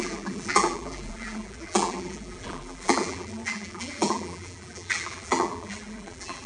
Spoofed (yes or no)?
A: yes